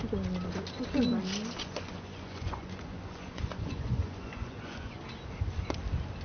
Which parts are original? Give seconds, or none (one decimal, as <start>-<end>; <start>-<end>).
0.0-1.6; 5.0-6.2

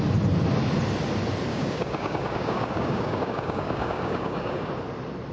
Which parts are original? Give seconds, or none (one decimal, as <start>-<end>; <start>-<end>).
0.0-1.5; 4.7-5.3

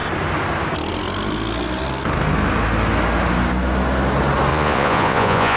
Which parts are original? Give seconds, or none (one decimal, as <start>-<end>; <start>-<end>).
0.0-4.5

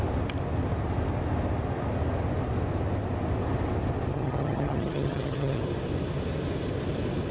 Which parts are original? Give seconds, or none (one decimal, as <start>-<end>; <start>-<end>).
0.0-4.1; 5.6-7.3

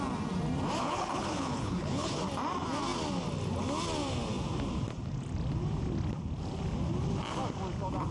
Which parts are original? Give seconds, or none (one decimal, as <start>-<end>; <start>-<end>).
0.0-0.8; 2.2-8.1

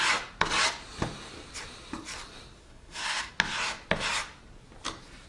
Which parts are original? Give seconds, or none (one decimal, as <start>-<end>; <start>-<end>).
0.0-2.6; 3.3-5.3